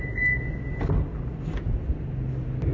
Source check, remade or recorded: recorded